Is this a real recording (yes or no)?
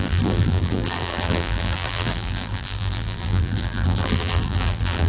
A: no